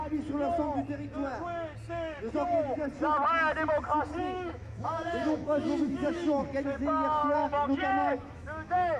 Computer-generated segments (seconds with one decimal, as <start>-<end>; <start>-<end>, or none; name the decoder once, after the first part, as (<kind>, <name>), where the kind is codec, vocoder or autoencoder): 4.2-6.4 (autoencoder, DAC-VAE); 7.2-9.0